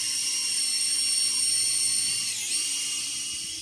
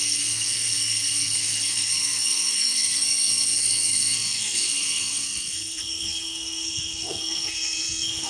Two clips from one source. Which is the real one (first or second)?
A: first